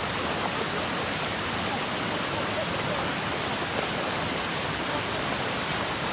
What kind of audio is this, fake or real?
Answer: real